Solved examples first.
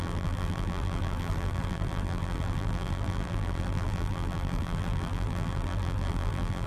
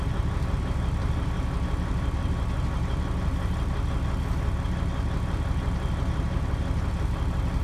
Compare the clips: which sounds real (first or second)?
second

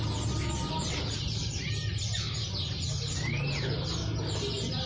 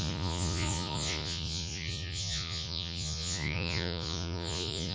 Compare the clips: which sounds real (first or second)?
first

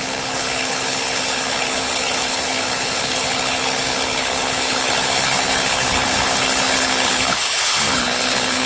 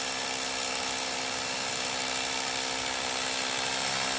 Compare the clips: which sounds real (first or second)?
second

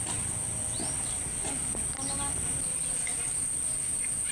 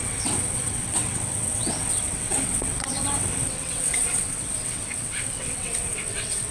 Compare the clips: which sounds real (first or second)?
first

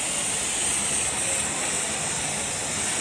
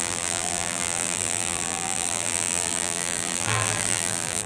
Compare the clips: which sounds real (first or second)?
first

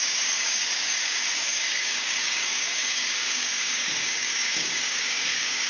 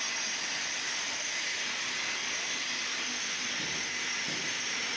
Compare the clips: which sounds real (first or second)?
second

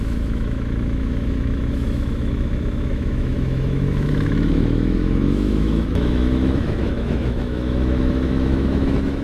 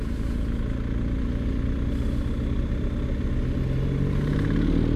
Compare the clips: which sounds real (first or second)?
second